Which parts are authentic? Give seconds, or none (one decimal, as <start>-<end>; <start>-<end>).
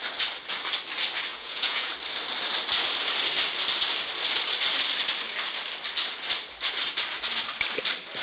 0.0-1.3; 1.9-8.2